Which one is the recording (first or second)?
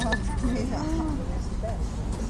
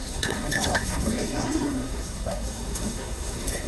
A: first